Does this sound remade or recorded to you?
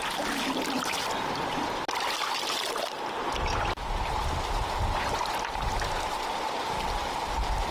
recorded